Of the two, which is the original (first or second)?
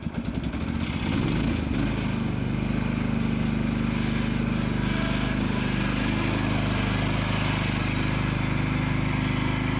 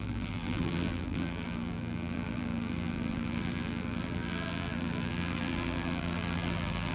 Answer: first